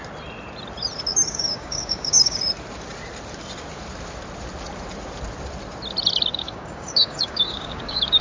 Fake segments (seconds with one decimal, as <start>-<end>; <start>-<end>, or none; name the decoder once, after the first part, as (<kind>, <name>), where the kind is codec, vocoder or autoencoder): 1.1-2.4 (codec, DAC); 6.3-8.2